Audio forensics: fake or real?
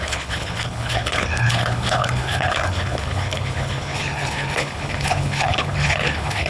fake